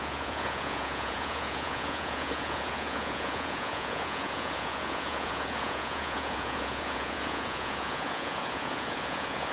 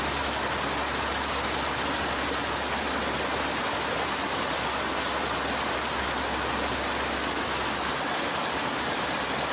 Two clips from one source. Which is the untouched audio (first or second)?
second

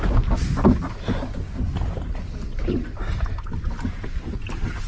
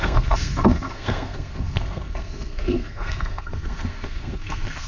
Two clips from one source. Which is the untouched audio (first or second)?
first